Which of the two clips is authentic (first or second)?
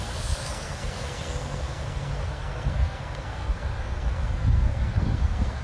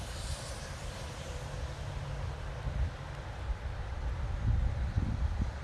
second